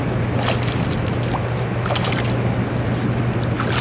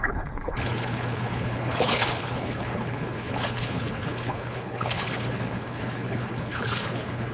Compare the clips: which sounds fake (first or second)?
second